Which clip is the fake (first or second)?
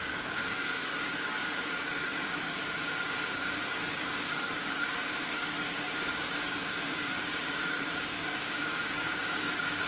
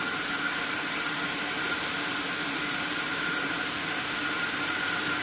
first